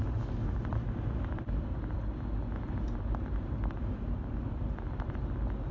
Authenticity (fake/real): real